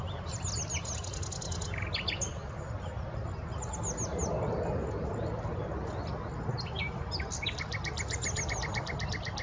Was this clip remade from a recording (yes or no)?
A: no